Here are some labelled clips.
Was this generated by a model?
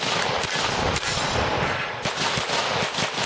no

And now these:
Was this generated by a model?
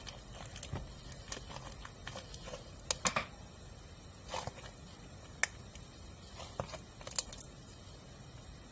no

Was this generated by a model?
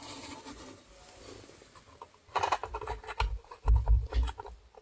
no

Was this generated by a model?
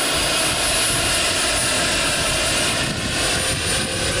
no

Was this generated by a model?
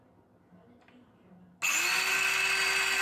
no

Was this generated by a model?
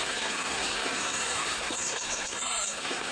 yes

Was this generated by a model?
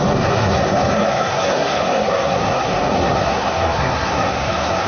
yes